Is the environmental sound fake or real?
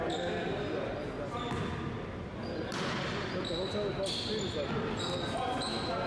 real